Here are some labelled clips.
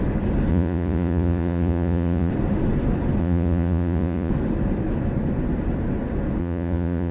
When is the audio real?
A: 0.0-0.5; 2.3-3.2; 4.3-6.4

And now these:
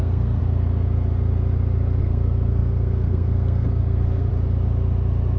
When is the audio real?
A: 0.4-2.0; 4.3-5.4

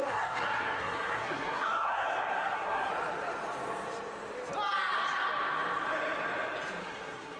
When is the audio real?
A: 2.9-6.8

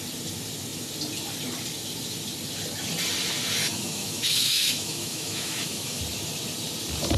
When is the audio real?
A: 0.0-3.6; 6.0-7.2